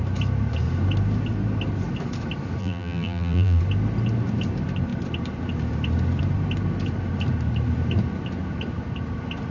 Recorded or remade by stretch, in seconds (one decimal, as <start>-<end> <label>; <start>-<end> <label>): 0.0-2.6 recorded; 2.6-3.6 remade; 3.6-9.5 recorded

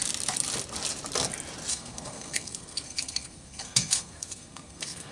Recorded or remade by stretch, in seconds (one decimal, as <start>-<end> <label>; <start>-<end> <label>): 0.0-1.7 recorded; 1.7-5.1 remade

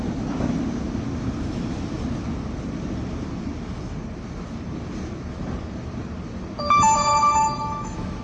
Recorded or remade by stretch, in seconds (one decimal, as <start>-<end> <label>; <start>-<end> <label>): 0.0-7.1 recorded; 7.1-8.2 remade

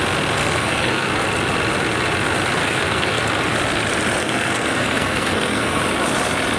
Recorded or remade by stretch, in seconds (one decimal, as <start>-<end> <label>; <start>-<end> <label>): 0.0-0.4 recorded; 0.4-1.1 remade; 1.1-2.6 recorded; 2.6-3.2 remade; 3.2-4.2 recorded; 4.2-5.8 remade; 5.8-6.6 recorded

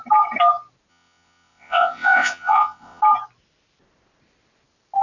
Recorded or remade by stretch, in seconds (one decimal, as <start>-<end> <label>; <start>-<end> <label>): 0.0-0.9 recorded; 0.9-3.0 remade; 3.0-5.0 recorded

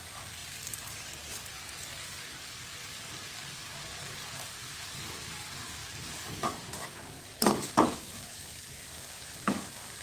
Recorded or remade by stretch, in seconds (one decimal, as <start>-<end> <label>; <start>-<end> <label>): 0.0-10.0 remade